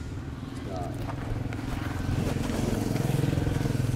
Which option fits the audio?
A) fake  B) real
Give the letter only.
B